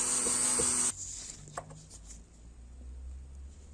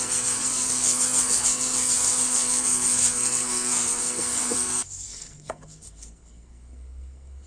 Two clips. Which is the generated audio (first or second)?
second